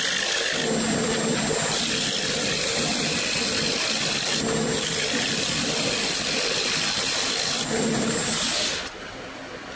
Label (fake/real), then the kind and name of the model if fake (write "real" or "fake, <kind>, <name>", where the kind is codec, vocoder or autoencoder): real